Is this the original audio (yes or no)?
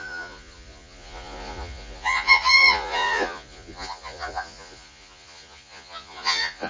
no